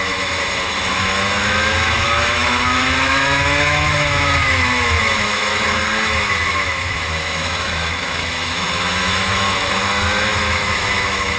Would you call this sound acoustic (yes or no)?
no